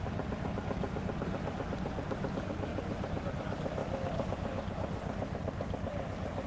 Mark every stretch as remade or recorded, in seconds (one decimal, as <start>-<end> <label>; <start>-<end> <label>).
0.0-6.5 recorded

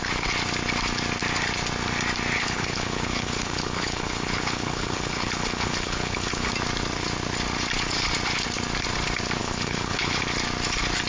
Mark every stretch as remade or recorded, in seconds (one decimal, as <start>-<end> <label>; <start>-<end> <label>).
0.0-2.4 recorded; 2.4-6.5 remade; 6.5-9.4 recorded; 9.4-10.2 remade; 10.2-11.1 recorded

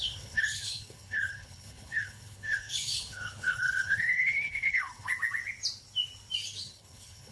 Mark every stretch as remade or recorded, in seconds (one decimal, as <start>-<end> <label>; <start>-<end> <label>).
0.0-5.1 remade; 5.1-6.4 recorded; 6.4-7.3 remade

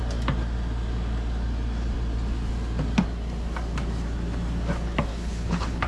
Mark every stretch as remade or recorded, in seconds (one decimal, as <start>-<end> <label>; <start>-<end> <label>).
0.0-5.1 recorded; 5.1-5.9 remade

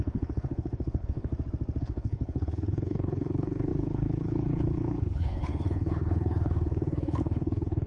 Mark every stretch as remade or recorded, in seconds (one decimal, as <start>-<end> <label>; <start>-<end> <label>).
0.0-1.3 remade; 1.3-1.8 recorded; 1.8-7.9 remade

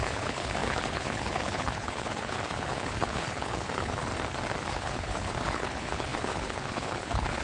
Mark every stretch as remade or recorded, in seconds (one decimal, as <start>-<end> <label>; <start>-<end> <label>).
0.0-4.1 remade; 4.1-4.7 recorded; 4.7-7.4 remade

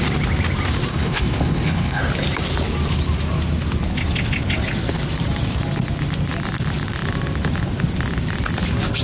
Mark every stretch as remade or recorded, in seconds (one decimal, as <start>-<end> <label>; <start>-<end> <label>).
0.0-0.9 recorded; 0.9-2.0 remade; 2.0-9.0 recorded